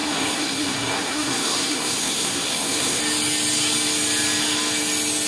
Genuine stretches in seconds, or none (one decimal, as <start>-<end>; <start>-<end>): 3.0-5.3